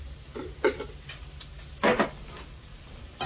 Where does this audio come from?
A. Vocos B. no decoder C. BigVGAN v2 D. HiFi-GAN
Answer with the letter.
B